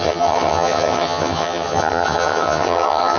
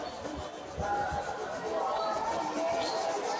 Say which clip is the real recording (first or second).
second